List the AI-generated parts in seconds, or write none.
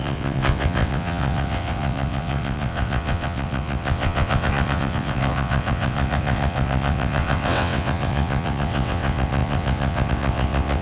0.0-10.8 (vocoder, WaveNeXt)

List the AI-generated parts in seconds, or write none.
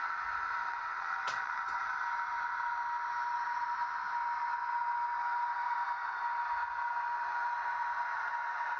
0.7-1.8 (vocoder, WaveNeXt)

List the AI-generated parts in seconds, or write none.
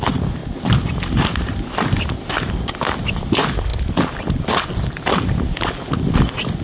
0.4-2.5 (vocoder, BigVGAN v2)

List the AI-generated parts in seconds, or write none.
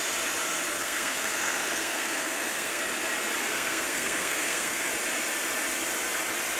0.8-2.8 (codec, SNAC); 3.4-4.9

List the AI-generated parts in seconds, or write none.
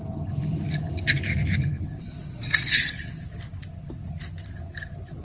none